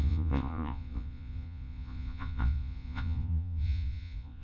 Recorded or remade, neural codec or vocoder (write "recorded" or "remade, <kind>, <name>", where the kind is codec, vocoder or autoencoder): remade, vocoder, Vocos